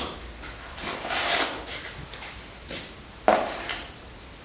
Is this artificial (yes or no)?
no